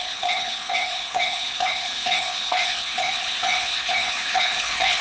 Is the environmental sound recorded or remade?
remade